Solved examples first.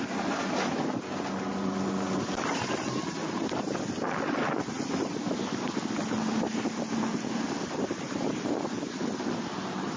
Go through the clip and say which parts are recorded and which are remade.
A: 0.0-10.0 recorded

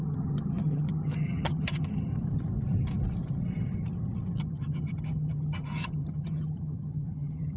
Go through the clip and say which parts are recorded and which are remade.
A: 0.0-2.1 remade; 2.1-4.4 recorded; 4.4-7.6 remade

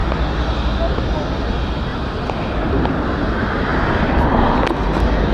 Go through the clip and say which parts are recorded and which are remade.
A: 0.0-1.9 recorded; 1.9-3.1 remade; 3.1-3.7 recorded; 3.7-4.3 remade; 4.3-5.3 recorded

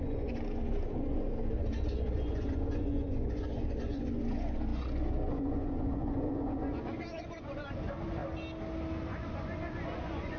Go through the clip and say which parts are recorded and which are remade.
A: 0.0-8.2 remade; 8.2-9.1 recorded; 9.1-10.4 remade

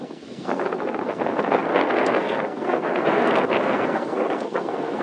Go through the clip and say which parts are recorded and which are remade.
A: 0.0-5.0 remade

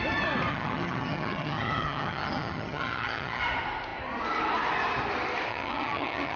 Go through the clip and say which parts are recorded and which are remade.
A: 0.0-0.5 recorded; 0.5-3.4 remade; 3.4-5.5 recorded; 5.5-6.4 remade

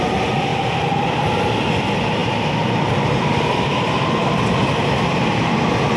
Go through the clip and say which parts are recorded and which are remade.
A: 0.0-6.0 recorded